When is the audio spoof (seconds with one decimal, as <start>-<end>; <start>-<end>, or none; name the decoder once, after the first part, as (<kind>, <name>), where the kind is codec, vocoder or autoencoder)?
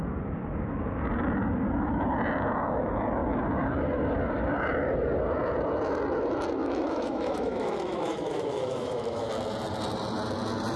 6.6-9.3 (autoencoder, DAC-VAE)